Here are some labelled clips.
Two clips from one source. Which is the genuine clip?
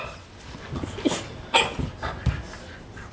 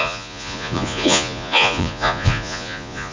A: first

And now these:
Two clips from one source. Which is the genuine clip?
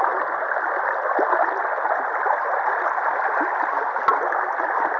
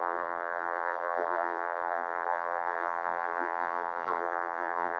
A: first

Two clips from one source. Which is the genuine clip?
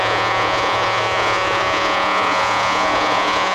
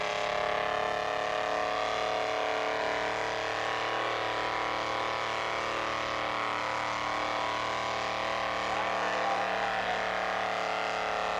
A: second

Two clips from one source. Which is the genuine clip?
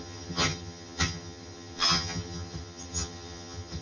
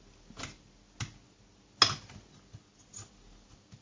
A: second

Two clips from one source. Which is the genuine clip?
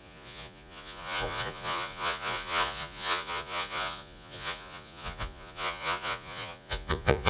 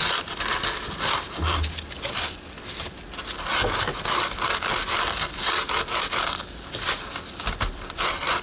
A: second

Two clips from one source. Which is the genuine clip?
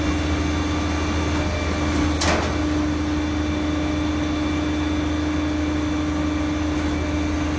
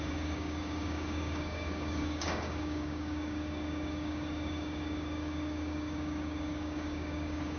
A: first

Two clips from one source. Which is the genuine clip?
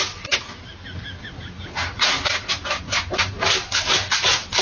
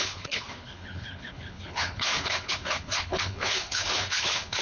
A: first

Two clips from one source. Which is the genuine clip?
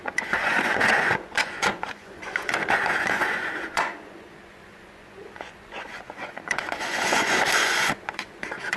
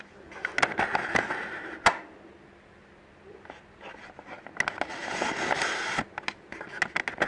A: second